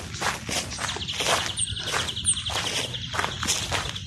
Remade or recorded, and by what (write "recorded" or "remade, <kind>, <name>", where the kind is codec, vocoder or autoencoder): recorded